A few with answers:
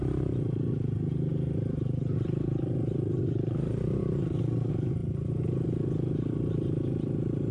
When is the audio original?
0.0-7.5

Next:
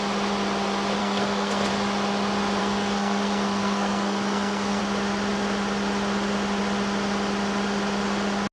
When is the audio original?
0.0-1.0; 1.7-2.6; 4.8-8.5